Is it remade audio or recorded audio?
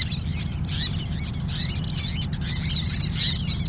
recorded